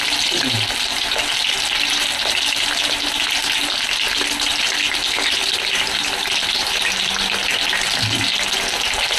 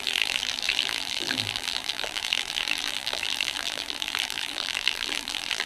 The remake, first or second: second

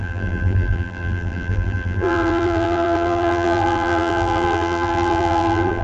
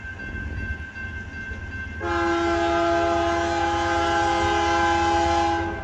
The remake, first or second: first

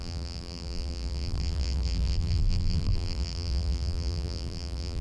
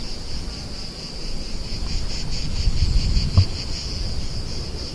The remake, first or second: first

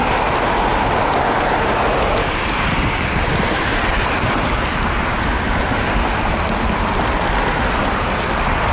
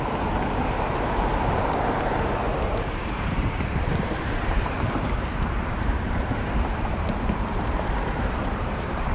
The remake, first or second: second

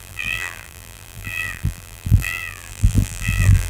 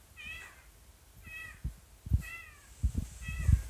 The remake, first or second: first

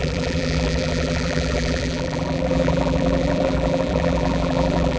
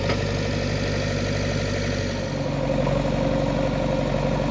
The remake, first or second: first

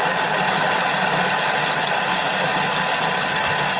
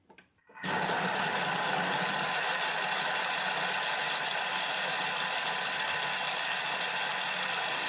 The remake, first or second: first